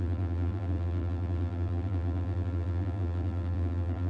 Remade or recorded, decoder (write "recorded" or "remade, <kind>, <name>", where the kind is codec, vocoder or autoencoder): remade, vocoder, BigVGAN v2